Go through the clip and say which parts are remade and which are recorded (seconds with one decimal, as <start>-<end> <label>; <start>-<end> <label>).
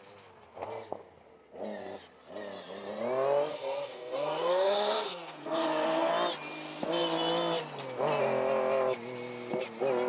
0.0-3.5 recorded; 3.5-6.1 remade; 6.1-10.1 recorded